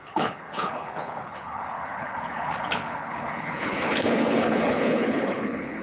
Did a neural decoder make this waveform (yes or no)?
yes